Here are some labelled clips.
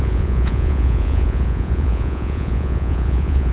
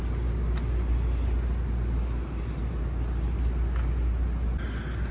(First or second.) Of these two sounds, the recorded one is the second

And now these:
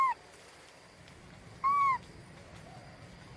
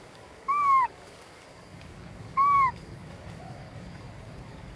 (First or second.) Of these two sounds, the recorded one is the first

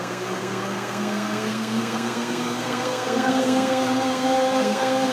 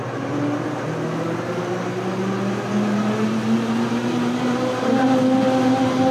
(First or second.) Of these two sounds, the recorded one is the second